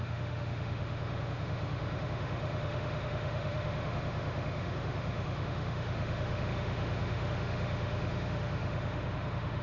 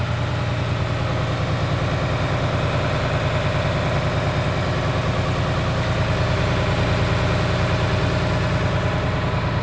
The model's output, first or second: first